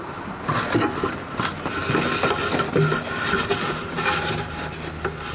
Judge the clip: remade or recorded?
recorded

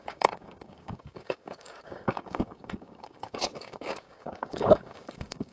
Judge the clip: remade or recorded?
remade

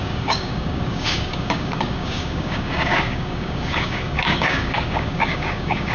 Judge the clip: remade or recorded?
remade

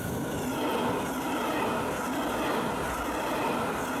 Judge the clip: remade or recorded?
recorded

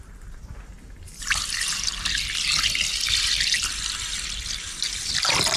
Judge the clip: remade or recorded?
recorded